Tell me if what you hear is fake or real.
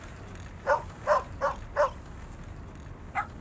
real